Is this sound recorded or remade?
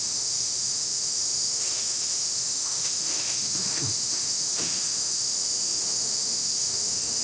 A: remade